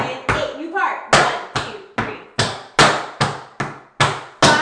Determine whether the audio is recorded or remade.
recorded